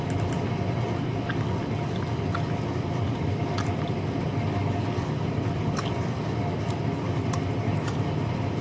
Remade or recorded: recorded